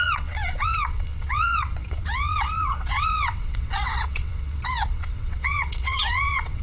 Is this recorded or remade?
remade